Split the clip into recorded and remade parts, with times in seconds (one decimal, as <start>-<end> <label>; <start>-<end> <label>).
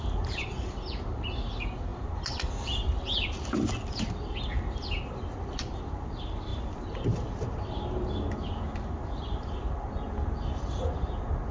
0.0-11.5 recorded